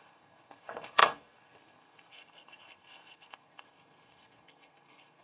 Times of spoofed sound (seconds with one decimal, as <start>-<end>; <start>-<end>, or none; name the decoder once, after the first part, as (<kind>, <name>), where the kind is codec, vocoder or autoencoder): 0.0-5.2 (codec, SNAC)